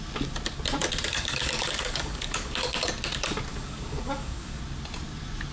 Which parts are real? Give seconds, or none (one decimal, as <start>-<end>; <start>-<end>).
0.0-1.1; 2.8-3.5; 4.6-5.5